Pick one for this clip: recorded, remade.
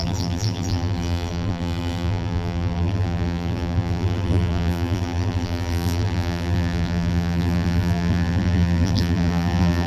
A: remade